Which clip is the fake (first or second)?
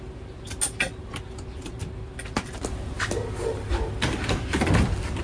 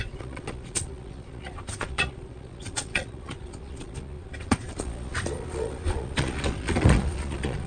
second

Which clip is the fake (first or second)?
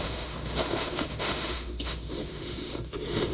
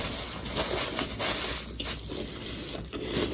first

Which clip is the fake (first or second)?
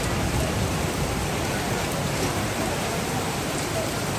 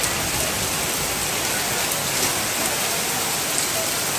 first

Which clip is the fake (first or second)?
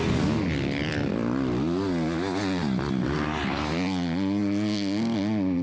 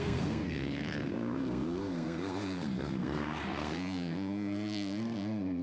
second